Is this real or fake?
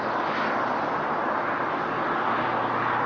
real